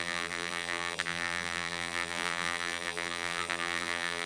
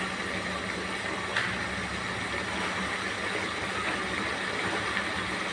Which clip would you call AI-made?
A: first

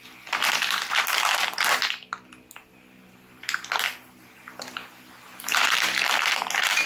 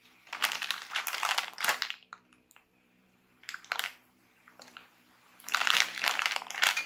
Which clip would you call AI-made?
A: second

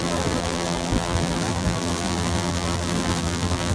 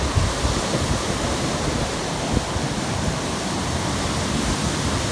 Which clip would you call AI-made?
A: first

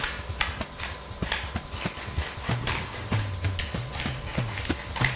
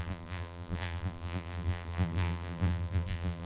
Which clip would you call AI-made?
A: second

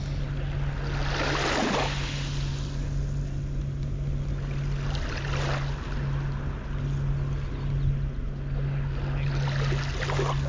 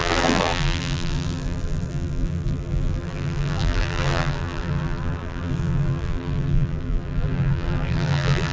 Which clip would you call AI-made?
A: second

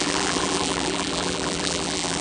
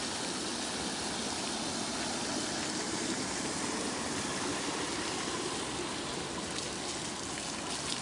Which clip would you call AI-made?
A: first